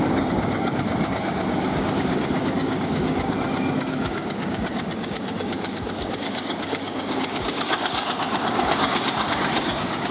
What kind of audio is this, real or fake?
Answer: fake